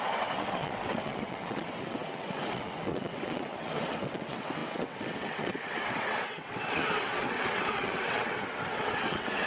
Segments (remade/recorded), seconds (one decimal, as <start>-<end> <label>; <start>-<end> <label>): 0.0-9.5 remade